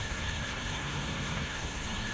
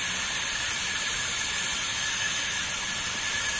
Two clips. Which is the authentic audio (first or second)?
second